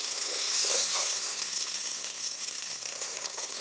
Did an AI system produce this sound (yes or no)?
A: yes